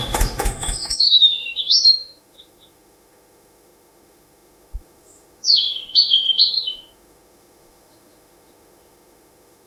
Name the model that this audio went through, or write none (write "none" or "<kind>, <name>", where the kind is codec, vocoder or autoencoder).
autoencoder, DAC-VAE